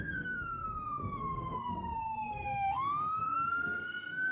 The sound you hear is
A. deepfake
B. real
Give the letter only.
A